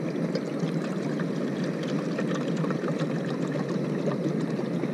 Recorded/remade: recorded